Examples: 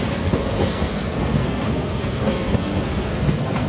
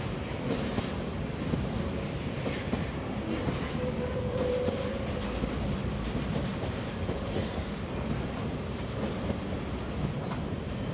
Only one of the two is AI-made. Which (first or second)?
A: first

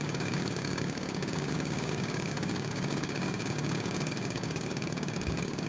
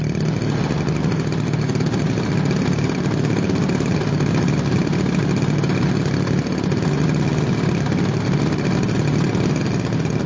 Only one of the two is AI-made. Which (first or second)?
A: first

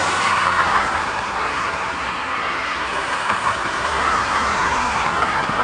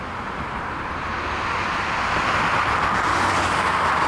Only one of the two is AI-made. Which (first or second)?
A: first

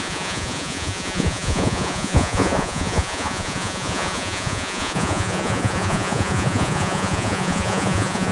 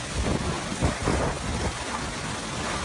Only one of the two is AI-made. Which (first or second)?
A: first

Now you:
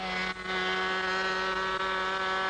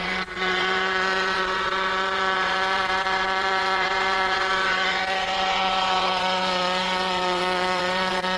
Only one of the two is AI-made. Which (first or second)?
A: second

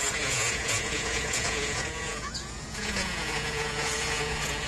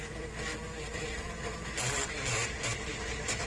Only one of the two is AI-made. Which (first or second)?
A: first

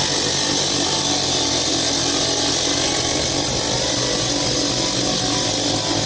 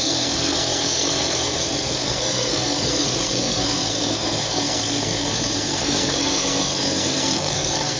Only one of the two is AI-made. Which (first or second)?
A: second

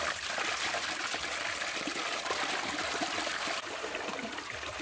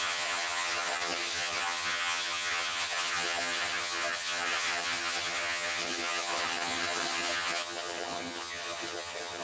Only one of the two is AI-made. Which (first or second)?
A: second